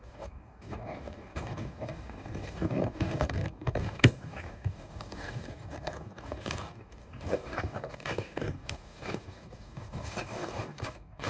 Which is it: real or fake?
fake